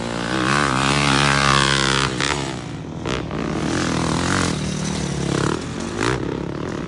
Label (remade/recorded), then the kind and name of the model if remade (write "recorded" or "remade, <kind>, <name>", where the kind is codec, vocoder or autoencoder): recorded